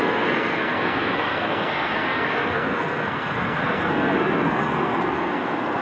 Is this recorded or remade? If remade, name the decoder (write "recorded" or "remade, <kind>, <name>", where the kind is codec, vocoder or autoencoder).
remade, codec, SNAC